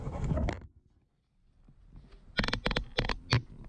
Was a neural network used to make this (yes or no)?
no